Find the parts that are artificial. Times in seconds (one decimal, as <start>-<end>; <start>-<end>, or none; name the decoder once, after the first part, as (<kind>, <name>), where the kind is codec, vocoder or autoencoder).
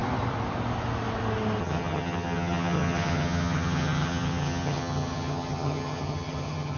1.6-6.8 (vocoder, HiFi-GAN)